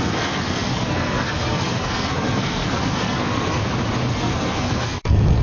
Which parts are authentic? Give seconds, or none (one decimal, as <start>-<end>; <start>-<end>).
3.6-4.1